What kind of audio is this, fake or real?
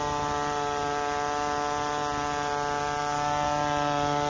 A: real